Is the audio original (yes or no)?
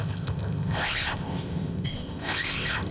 no